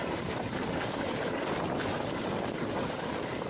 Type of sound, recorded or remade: recorded